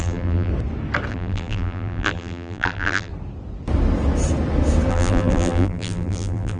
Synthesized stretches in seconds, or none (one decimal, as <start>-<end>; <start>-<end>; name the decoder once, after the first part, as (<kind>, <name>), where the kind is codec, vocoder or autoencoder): 0.0-0.5 (vocoder, BigVGAN v2); 1.1-3.1; 4.9-6.6